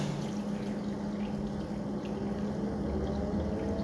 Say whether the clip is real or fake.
real